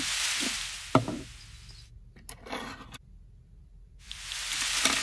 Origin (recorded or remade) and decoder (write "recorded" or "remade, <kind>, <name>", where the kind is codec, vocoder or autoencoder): recorded